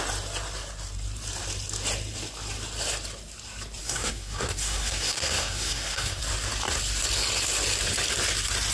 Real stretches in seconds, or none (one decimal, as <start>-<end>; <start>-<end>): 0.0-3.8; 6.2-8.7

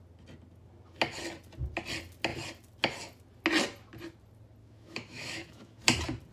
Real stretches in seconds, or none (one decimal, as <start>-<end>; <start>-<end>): 0.0-4.6; 5.8-6.3

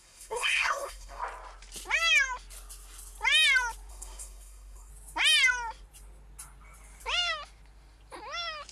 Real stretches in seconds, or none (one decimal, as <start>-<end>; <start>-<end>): 1.2-3.9; 4.9-8.7

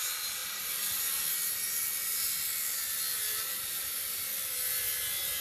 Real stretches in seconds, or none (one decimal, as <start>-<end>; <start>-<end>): 0.0-0.4; 1.0-2.0; 4.6-5.4

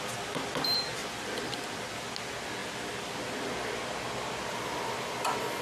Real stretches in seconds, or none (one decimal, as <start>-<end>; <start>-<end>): 0.0-1.0; 2.0-2.6; 3.7-5.6